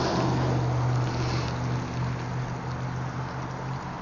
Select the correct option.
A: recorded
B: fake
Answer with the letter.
A